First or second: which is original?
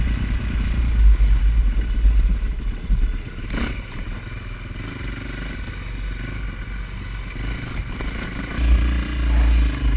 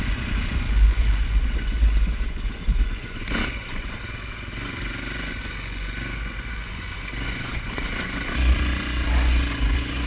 first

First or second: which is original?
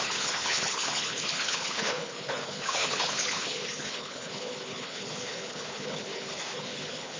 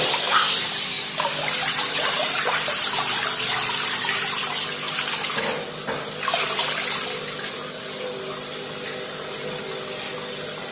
second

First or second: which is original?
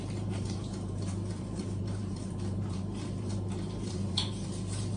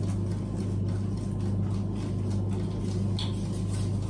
second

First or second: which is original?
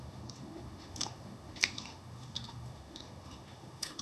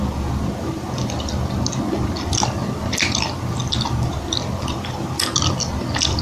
second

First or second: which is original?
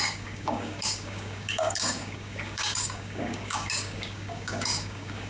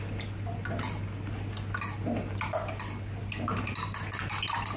second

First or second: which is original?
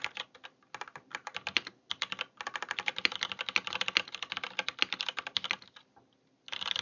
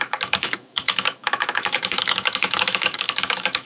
first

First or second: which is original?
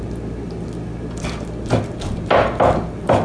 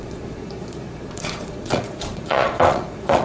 first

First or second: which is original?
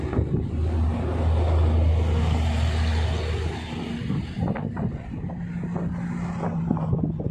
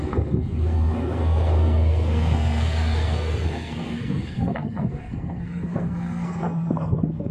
first